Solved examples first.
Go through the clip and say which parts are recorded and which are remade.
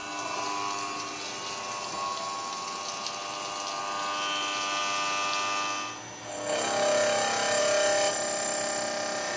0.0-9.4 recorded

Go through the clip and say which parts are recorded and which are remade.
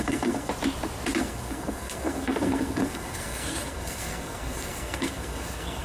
0.0-0.5 remade; 0.5-1.2 recorded; 1.2-5.8 remade